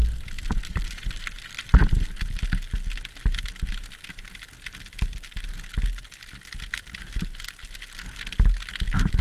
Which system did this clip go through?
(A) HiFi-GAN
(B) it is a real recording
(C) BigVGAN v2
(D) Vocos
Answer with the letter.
B